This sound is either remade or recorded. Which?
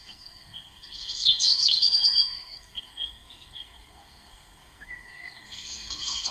remade